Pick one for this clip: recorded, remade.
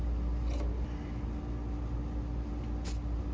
recorded